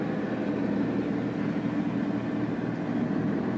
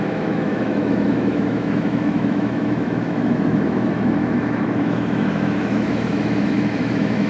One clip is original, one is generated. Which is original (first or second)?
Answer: first